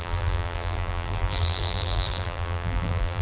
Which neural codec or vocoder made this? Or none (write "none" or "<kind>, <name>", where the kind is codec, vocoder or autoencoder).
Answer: vocoder, BigVGAN v2